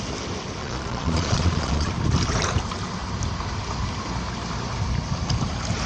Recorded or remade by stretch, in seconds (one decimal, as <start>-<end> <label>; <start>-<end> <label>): 0.0-0.6 recorded; 0.6-1.9 remade; 1.9-5.9 recorded